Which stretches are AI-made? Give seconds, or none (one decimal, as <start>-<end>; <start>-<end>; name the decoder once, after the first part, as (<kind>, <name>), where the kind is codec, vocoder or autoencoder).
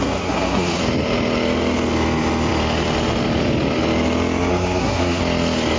0.0-0.8 (codec, SNAC); 4.5-5.2